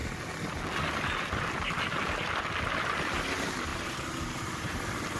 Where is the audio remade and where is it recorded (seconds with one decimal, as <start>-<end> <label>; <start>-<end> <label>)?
0.0-3.7 recorded; 3.7-4.8 remade; 4.8-5.2 recorded